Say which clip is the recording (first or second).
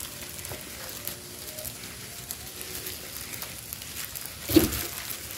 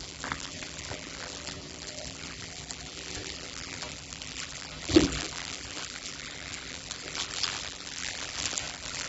first